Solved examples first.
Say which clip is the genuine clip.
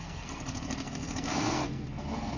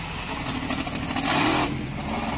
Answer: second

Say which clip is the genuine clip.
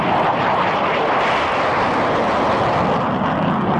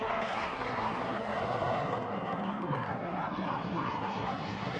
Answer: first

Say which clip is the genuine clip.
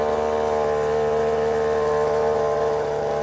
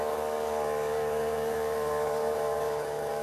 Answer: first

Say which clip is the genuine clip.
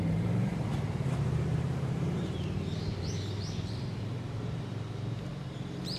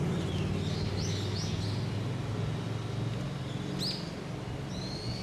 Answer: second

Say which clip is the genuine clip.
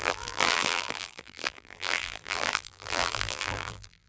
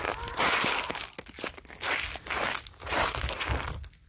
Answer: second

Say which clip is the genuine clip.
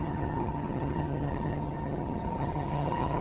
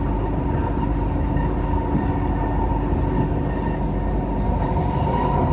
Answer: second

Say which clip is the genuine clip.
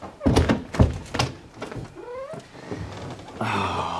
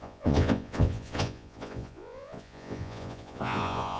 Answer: first